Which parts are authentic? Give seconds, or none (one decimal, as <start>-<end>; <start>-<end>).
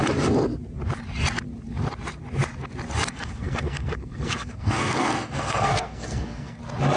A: 0.0-3.1; 6.6-7.0